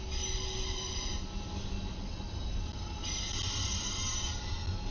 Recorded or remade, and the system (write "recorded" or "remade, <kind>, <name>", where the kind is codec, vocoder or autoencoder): recorded